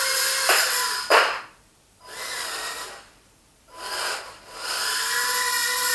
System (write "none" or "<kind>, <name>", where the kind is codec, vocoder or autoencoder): vocoder, BigVGAN v2